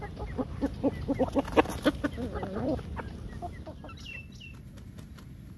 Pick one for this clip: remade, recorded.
recorded